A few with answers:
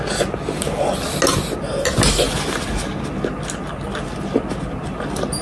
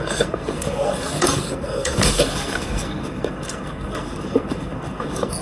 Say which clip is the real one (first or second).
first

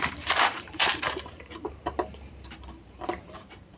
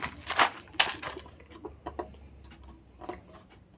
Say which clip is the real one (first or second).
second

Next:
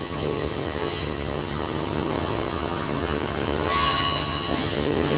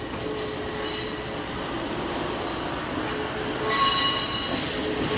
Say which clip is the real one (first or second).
second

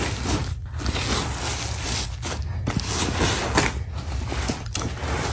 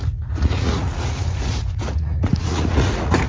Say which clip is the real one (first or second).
first